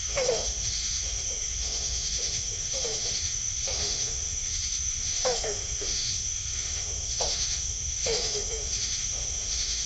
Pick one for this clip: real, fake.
fake